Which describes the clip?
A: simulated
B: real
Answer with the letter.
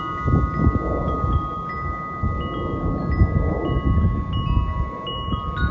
B